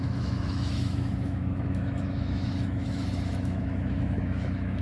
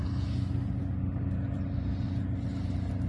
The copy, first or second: first